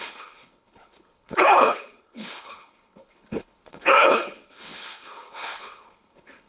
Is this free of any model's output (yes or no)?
no